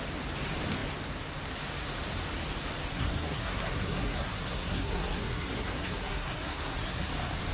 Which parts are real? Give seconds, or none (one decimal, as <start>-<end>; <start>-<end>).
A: 0.0-2.9; 7.1-7.5

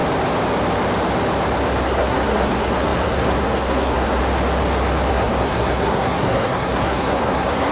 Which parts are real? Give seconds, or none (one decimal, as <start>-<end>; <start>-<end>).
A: 0.0-1.8; 4.2-5.1

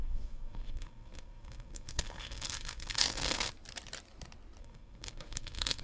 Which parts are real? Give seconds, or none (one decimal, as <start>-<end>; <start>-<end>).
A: 3.5-4.6

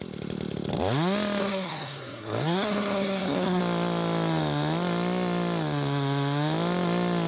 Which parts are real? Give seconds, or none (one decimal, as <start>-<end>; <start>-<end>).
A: 0.0-1.4; 3.6-7.3

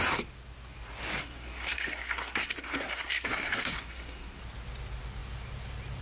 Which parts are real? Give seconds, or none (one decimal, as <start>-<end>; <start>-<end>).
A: 0.0-1.2; 4.4-6.0

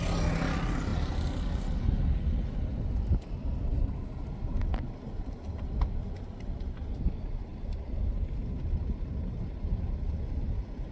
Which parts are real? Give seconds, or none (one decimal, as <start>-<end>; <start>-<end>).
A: 0.0-10.9